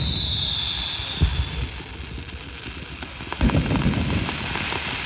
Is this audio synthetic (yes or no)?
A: no